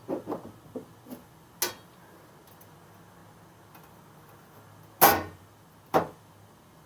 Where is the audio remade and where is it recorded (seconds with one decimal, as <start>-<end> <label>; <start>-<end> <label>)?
0.0-6.9 recorded